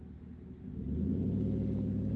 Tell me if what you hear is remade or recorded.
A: recorded